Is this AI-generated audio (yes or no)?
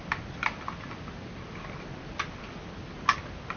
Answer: no